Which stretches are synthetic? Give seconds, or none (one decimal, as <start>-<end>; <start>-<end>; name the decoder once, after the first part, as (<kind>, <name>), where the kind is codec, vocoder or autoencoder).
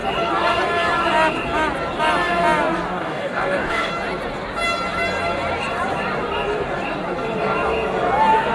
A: 2.9-3.9 (codec, DAC)